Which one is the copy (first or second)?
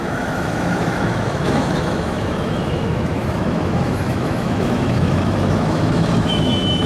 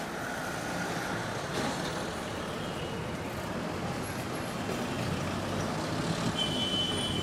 first